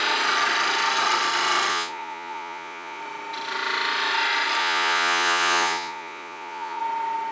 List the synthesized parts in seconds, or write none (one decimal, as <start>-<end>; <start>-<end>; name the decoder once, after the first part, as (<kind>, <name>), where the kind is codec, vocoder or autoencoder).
1.7-3.0 (vocoder, Vocos); 4.6-6.8